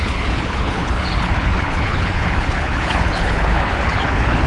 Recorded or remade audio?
remade